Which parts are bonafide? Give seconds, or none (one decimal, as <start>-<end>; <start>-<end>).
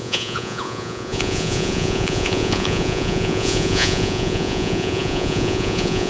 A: none